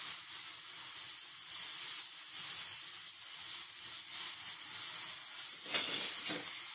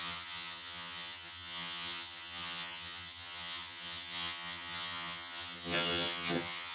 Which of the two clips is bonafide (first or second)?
first